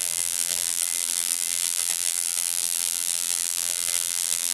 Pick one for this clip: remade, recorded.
remade